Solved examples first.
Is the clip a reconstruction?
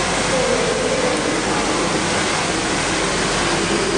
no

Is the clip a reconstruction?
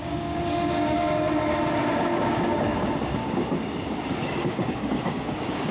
yes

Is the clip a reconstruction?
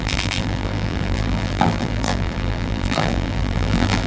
yes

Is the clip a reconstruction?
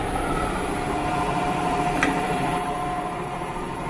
yes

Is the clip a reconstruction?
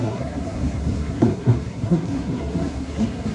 yes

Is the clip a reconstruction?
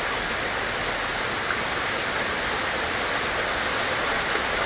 no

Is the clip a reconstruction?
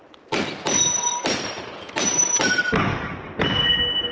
no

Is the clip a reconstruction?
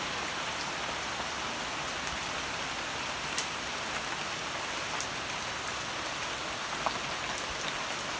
no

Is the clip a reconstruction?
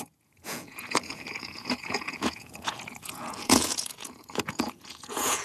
yes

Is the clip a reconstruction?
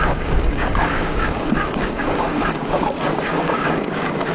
yes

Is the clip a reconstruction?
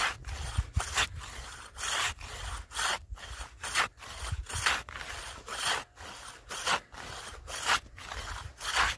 no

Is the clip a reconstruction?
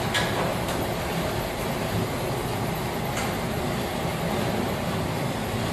no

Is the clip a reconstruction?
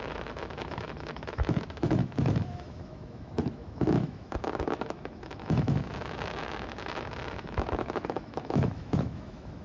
yes